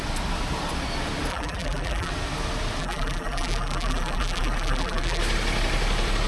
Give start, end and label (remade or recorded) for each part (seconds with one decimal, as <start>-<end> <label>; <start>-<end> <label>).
0.0-1.3 recorded; 1.3-2.1 remade; 2.1-2.8 recorded; 2.8-5.2 remade; 5.2-6.3 recorded